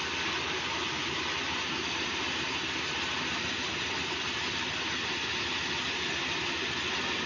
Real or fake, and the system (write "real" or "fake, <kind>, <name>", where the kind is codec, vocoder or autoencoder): real